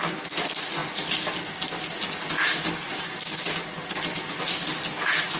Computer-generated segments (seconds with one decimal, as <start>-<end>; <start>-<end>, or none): none